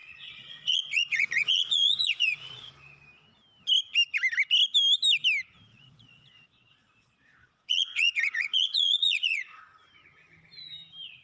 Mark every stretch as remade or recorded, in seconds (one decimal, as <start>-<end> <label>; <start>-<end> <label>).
0.0-2.7 remade; 2.7-5.7 recorded; 5.7-9.6 remade; 9.6-11.2 recorded